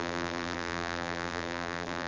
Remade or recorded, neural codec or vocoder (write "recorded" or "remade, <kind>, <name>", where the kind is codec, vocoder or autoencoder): remade, vocoder, BigVGAN v2